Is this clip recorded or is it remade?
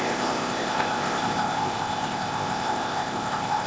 remade